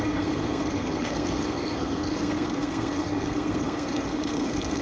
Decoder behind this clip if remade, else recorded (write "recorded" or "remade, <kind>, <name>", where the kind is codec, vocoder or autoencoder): remade, codec, SNAC